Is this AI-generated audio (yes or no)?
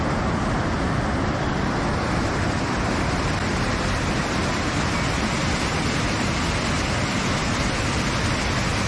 no